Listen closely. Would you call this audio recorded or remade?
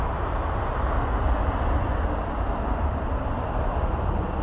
recorded